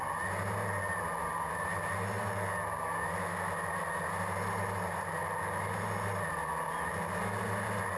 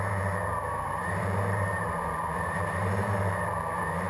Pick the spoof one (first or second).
second